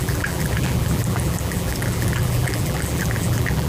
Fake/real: fake